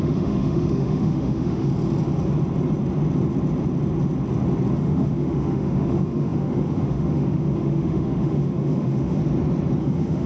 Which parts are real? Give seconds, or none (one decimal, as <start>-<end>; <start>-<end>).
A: 1.7-4.8; 9.2-9.8